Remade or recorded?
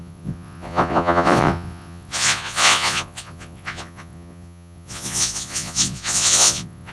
remade